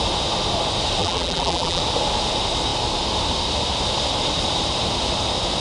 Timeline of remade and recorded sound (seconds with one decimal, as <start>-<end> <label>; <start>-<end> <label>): 0.0-1.0 recorded; 1.0-1.8 remade; 1.8-5.6 recorded